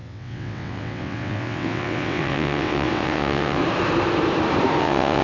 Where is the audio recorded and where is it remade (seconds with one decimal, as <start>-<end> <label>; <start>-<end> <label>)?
0.0-3.6 remade; 3.6-4.8 recorded; 4.8-5.2 remade